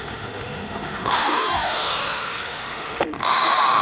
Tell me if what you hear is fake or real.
fake